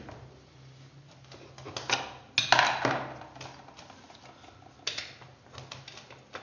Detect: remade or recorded recorded